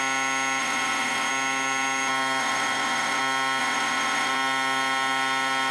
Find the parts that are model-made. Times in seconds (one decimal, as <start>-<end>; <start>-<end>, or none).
0.6-1.3; 2.4-3.2; 3.6-4.3